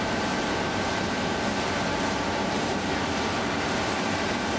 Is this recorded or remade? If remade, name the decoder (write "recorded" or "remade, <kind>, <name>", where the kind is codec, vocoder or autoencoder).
remade, vocoder, BigVGAN v2